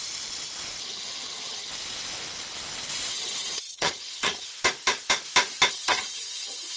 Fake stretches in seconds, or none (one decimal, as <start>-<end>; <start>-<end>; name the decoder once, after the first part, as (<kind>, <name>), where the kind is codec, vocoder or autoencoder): 0.8-1.7 (vocoder, HiFi-GAN); 3.1-4.5; 5.7-6.8